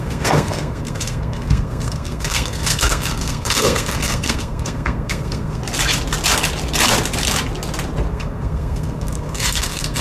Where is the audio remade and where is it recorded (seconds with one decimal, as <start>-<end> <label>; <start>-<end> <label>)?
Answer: 0.0-5.6 remade; 5.6-8.1 recorded; 8.1-10.0 remade